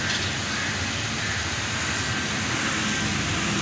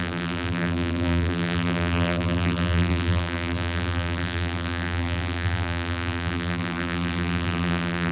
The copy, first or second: second